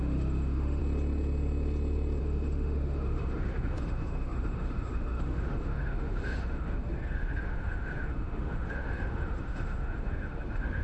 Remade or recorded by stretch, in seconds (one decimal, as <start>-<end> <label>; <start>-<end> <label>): 0.0-0.8 remade; 0.8-2.2 recorded; 2.2-10.8 remade